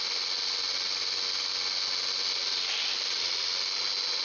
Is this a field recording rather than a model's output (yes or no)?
yes